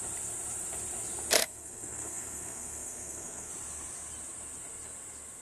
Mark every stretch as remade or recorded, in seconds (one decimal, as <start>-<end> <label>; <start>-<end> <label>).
0.0-1.4 recorded; 1.4-3.5 remade; 3.5-5.4 recorded